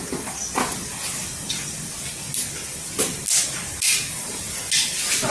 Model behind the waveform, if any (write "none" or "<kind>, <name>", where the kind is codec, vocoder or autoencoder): none